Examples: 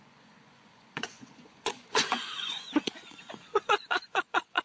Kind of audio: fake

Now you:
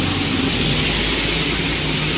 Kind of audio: real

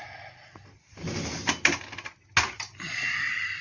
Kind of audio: real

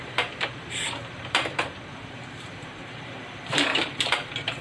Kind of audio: fake